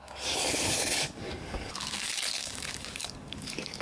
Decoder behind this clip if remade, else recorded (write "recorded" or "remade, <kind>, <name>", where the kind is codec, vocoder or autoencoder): remade, codec, DAC